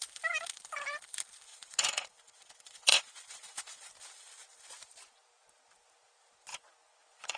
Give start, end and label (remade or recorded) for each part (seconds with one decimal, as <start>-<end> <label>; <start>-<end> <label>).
0.0-1.5 recorded; 1.5-3.9 remade; 3.9-6.5 recorded; 6.5-7.4 remade